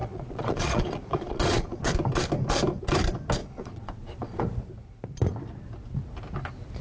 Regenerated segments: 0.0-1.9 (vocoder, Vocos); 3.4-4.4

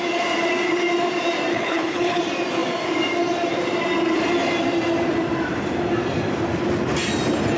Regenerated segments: 1.5-2.2 (codec, HILCodec)

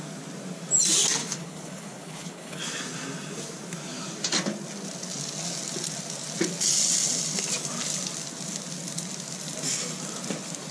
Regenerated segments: 1.2-2.6 (codec, HILCodec)